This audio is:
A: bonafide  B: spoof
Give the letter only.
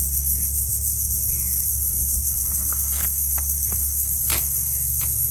B